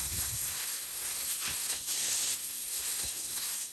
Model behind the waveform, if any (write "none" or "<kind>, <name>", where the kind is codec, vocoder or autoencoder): codec, SNAC